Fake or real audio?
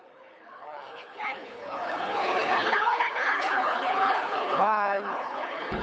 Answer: fake